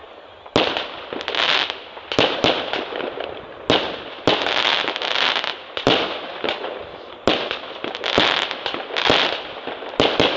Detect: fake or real real